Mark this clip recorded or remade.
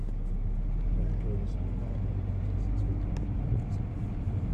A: recorded